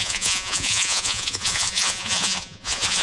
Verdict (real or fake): fake